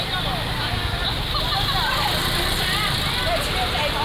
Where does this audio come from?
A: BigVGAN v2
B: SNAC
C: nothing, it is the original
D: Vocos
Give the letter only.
C